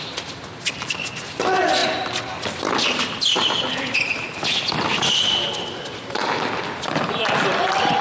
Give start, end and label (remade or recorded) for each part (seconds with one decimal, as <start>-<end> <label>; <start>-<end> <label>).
0.0-8.0 recorded